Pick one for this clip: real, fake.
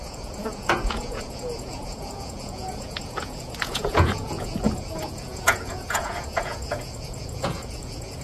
fake